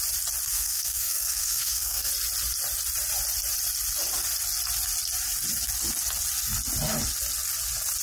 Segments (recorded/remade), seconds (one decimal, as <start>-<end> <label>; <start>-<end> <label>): 0.0-0.5 recorded; 0.5-2.1 remade; 2.1-8.0 recorded